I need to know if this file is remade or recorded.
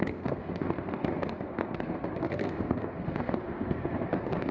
remade